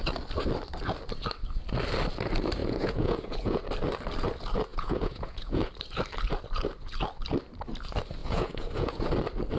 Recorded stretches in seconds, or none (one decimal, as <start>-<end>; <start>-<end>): 0.0-2.6; 3.6-4.7; 5.7-8.2; 9.1-9.6